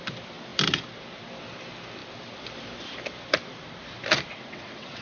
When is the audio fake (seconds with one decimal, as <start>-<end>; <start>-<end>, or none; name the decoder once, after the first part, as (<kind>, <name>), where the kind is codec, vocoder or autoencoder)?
4.3-5.0 (vocoder, WaveNeXt)